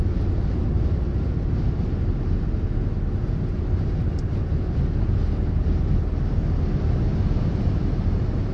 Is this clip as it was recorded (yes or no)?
yes